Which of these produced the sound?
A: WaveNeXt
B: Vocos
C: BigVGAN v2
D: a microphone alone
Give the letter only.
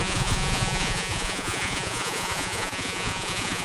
B